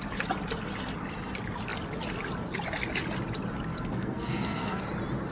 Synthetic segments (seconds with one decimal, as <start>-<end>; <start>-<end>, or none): 3.7-4.8

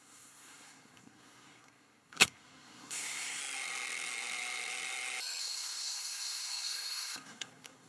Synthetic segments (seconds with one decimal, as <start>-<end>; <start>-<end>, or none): 0.0-3.4; 5.4-7.9